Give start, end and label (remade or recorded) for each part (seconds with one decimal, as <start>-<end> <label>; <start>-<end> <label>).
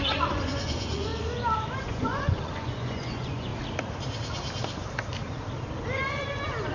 0.0-1.1 remade; 1.1-1.8 recorded; 1.8-3.5 remade; 3.5-6.7 recorded